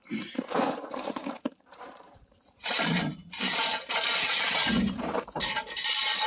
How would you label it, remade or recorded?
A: remade